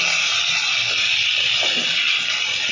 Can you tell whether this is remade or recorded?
recorded